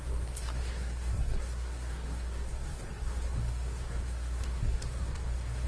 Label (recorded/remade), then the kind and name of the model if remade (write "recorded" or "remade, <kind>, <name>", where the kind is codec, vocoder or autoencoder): remade, codec, SNAC